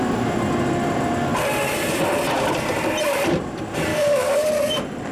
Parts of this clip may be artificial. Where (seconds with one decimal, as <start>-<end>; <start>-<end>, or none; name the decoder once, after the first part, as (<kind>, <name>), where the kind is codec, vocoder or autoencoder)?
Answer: 3.9-4.5 (codec, DAC)